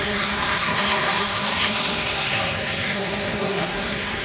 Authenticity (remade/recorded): remade